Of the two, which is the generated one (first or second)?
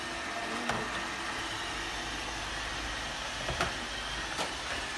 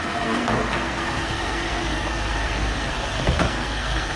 second